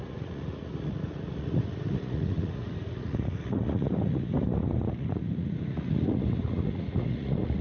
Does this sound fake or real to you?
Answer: fake